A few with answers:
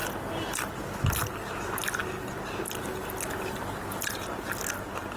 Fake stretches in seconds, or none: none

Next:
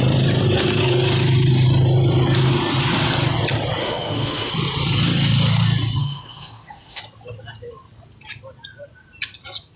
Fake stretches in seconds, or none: 3.8-4.5 (autoencoder, DAC-VAE); 6.0-7.0

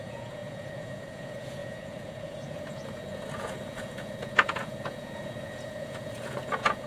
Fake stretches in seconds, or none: 0.0-6.9 (vocoder, Vocos)

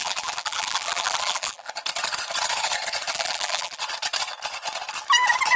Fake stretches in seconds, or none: 0.0-1.7 (vocoder, BigVGAN v2); 3.1-3.8

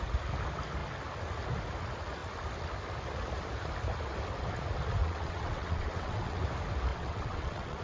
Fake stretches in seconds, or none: 5.0-6.4 (vocoder, WaveNeXt); 6.9-7.8